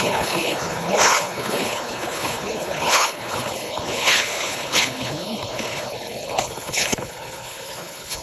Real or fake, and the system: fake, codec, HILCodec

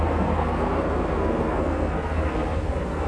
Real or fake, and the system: fake, codec, SNAC